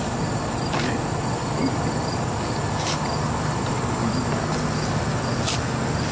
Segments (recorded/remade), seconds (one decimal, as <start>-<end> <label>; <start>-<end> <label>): 0.0-6.1 recorded